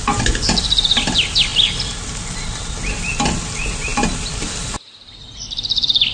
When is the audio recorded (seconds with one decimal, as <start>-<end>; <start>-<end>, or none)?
0.0-6.1